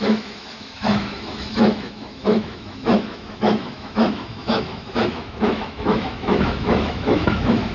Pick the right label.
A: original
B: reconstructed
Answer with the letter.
B